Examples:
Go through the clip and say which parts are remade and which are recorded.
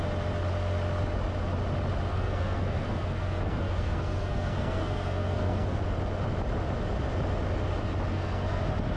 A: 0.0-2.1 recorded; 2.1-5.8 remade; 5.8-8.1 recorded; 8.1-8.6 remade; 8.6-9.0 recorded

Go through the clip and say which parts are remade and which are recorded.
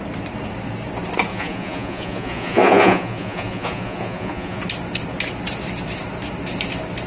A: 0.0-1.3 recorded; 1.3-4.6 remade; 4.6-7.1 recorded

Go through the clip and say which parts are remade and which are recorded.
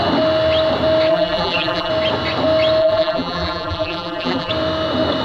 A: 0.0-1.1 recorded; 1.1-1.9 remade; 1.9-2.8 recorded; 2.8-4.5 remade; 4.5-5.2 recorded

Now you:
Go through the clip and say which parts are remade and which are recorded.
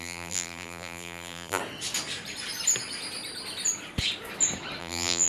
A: 0.0-1.6 remade; 1.6-4.8 recorded; 4.8-5.3 remade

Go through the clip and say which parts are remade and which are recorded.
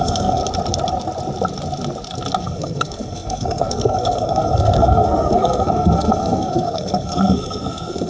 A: 0.0-0.4 remade; 0.4-2.4 recorded; 2.4-8.1 remade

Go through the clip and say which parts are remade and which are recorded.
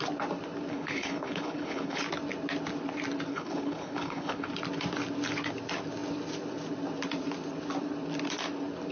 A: 0.0-0.7 recorded; 0.7-2.0 remade; 2.0-3.3 recorded; 3.3-4.5 remade; 4.5-8.9 recorded